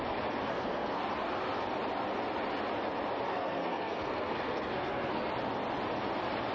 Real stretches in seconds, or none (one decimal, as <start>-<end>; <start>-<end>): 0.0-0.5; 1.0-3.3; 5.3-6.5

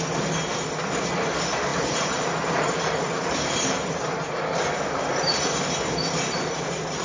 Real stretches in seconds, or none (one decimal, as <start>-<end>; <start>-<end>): 0.0-7.0

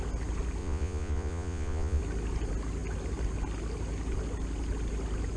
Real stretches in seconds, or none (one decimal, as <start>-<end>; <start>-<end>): 0.0-0.6; 2.0-5.4

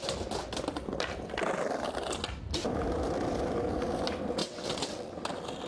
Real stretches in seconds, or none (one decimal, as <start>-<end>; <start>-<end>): 0.0-4.4; 5.1-5.7

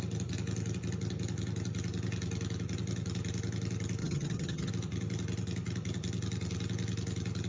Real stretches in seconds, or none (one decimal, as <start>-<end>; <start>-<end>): 0.0-4.0; 4.7-7.5